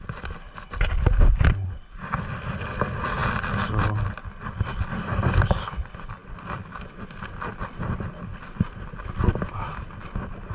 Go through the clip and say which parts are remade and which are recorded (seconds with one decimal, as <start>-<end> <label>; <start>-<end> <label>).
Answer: 0.0-10.5 recorded